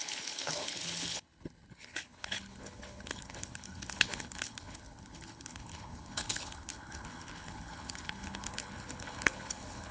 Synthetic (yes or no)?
yes